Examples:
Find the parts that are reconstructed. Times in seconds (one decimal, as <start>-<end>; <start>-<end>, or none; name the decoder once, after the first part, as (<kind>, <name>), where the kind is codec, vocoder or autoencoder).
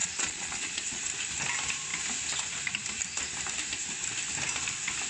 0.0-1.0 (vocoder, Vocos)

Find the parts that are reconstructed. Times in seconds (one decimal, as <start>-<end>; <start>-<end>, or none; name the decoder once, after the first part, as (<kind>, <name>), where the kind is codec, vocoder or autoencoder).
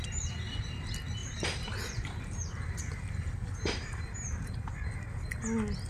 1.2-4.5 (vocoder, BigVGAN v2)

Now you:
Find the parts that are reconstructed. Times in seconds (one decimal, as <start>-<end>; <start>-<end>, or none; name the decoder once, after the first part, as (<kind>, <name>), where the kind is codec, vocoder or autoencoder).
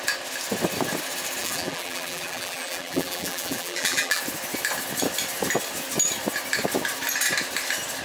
1.4-4.2 (vocoder, BigVGAN v2)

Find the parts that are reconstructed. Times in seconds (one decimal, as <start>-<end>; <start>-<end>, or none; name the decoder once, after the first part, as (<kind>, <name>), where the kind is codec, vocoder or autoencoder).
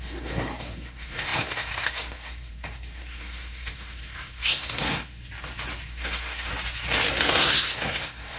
0.0-5.2 (codec, SNAC); 5.9-6.5; 7.1-8.4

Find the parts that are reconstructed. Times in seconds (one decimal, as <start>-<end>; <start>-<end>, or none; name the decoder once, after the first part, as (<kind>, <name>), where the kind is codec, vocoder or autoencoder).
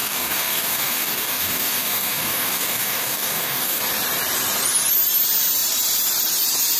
0.0-3.8 (codec, DAC)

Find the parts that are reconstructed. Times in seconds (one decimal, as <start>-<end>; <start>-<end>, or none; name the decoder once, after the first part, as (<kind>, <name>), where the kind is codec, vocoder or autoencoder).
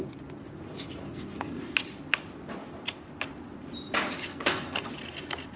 1.0-1.6 (codec, SNAC); 4.3-4.9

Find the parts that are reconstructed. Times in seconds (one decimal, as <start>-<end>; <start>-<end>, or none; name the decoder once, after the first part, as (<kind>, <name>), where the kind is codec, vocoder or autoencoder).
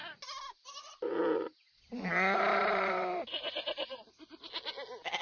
1.5-4.3 (vocoder, BigVGAN v2)